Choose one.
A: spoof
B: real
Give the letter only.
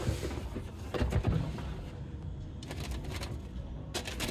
B